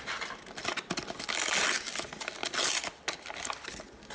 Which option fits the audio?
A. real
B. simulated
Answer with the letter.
A